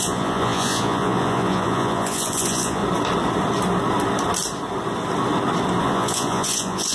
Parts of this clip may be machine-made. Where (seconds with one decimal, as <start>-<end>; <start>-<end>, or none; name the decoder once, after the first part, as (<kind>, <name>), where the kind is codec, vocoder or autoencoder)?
0.0-2.8 (vocoder, Vocos); 5.8-6.9